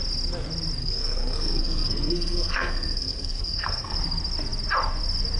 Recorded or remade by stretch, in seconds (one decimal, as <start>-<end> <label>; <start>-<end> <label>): 0.0-0.8 recorded; 0.8-4.0 remade; 4.0-5.4 recorded